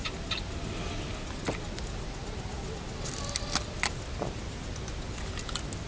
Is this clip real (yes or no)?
yes